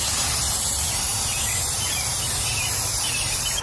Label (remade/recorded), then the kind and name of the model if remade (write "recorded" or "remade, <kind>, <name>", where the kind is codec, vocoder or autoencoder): remade, vocoder, BigVGAN v2